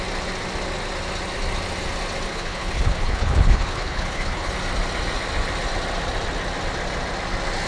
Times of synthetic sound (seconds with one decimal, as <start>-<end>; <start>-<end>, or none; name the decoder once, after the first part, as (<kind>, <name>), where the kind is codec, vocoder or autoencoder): 2.3-4.5 (codec, HILCodec)